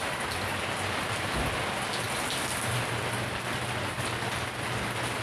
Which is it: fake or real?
real